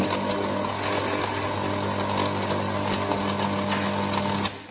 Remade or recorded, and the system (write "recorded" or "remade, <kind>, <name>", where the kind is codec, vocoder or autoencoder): recorded